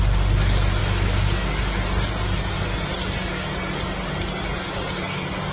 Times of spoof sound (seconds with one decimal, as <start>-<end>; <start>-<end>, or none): none